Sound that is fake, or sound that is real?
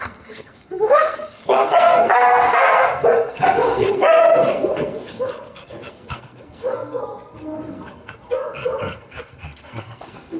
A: fake